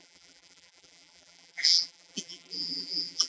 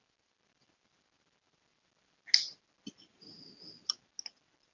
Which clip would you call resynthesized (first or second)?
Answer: first